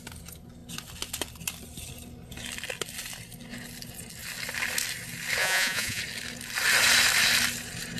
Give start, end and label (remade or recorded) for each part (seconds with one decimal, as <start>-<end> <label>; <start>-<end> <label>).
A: 0.0-5.4 recorded; 5.4-6.0 remade; 6.0-8.0 recorded